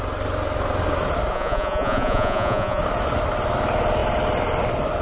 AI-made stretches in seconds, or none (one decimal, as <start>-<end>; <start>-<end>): 1.3-2.8